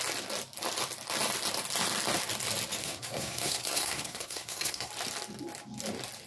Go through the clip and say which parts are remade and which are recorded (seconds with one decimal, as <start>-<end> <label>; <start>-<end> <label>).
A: 0.0-2.8 recorded; 2.8-4.9 remade; 4.9-6.3 recorded